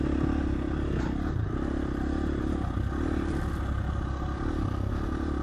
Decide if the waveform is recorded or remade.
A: recorded